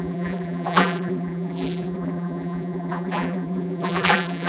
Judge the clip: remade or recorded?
remade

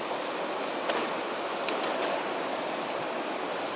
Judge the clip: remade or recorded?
recorded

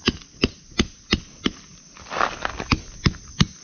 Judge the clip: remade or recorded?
recorded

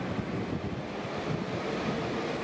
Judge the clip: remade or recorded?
recorded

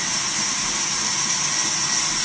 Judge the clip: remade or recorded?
recorded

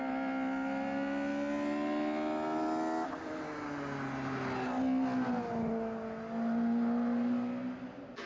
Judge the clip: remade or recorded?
recorded